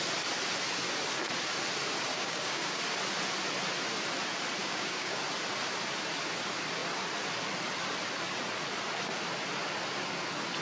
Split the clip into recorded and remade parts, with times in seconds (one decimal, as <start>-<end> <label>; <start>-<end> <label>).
0.0-2.1 recorded; 2.1-2.8 remade; 2.8-4.6 recorded; 4.6-5.2 remade; 5.2-10.6 recorded